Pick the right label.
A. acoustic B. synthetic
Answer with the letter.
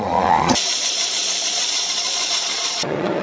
B